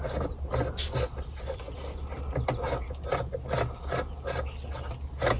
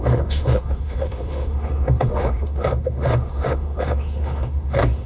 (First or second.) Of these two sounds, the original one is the first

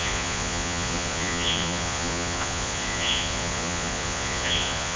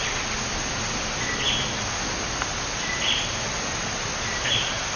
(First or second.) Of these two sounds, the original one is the second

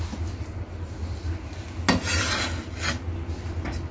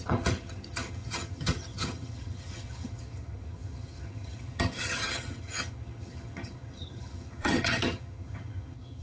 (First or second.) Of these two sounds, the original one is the first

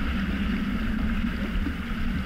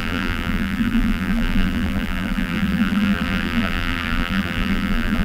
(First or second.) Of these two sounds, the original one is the first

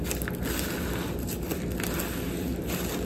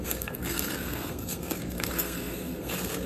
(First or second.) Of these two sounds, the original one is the first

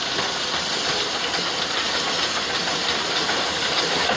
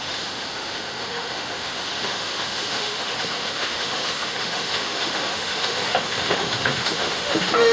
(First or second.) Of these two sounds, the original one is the first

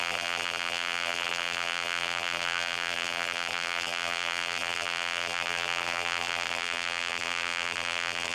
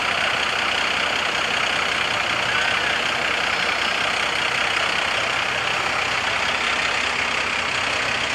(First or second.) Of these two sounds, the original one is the second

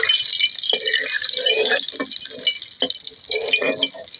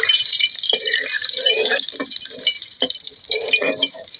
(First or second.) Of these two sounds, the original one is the first